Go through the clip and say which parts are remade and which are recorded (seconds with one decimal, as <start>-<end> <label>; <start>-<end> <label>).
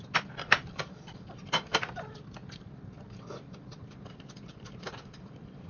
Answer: 0.0-1.7 remade; 1.7-4.9 recorded; 4.9-5.7 remade